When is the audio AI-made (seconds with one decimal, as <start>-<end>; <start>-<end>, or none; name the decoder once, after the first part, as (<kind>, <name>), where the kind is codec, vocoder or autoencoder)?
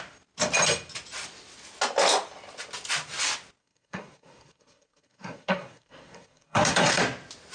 3.6-7.0 (codec, SNAC)